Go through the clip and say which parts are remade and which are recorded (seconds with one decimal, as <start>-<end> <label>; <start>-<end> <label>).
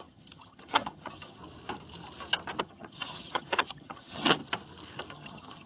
0.0-1.4 remade; 1.4-2.6 recorded; 2.6-4.4 remade; 4.4-5.1 recorded; 5.1-5.7 remade